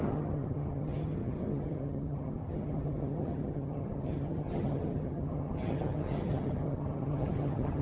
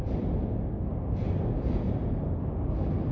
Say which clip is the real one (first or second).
second